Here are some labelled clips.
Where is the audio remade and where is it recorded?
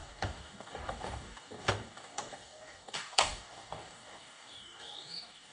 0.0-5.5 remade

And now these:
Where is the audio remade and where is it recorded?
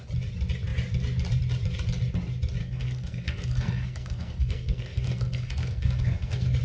0.0-2.6 recorded; 2.6-6.6 remade